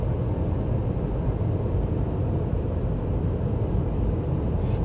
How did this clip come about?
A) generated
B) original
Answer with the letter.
B